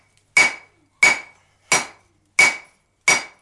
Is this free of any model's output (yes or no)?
yes